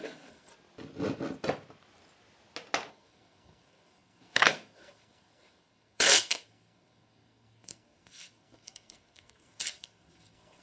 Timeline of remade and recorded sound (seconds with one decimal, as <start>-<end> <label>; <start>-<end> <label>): 0.0-0.5 remade; 0.5-2.9 recorded; 2.9-10.6 remade